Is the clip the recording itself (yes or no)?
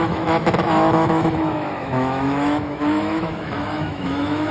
no